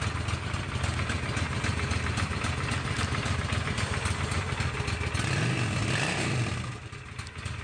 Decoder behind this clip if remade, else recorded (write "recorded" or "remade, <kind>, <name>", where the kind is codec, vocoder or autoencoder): recorded